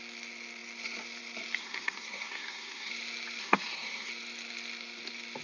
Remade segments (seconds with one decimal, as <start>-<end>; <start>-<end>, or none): 1.6-2.9; 3.4-4.1